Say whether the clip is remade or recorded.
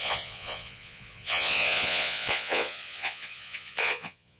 remade